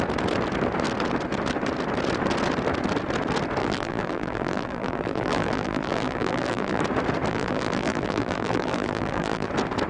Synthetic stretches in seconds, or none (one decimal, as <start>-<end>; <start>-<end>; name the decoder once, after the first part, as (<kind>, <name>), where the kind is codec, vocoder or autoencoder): 3.6-6.8 (vocoder, BigVGAN v2); 7.3-9.5